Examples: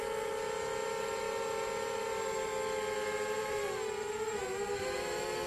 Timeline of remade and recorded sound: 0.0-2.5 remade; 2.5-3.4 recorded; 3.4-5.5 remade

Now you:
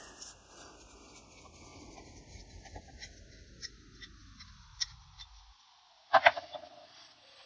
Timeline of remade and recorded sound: 0.0-7.5 recorded

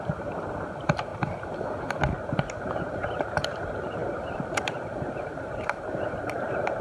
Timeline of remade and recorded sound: 0.0-1.1 remade; 1.1-2.5 recorded; 2.5-6.8 remade

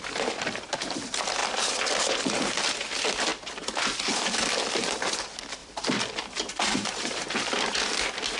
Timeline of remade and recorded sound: 0.0-3.3 recorded; 3.3-4.1 remade; 4.1-5.6 recorded; 5.6-7.8 remade; 7.8-8.4 recorded

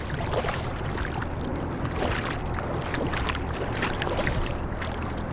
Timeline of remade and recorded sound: 0.0-5.3 recorded

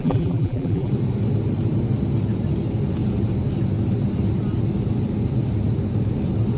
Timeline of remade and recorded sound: 0.0-0.9 remade; 0.9-6.6 recorded